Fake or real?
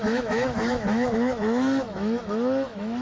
fake